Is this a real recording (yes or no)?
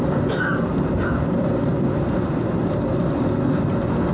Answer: yes